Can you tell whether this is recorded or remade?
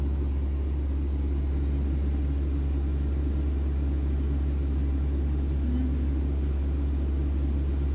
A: recorded